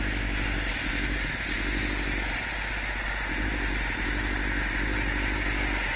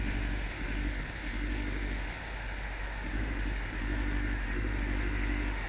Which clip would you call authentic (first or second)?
first